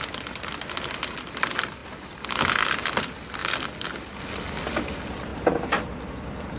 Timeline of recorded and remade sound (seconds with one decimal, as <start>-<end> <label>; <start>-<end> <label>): 0.0-6.6 recorded

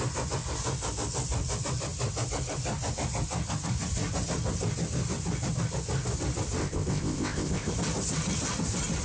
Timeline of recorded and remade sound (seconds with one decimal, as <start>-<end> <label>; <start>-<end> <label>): 0.0-6.6 recorded; 6.6-7.7 remade; 7.7-9.0 recorded

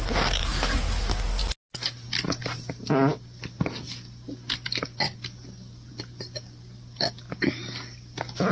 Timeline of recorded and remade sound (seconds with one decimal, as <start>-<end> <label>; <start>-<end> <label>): 0.0-8.5 recorded